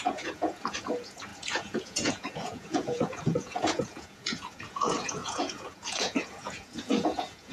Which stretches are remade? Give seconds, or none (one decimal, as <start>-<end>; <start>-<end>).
0.0-7.5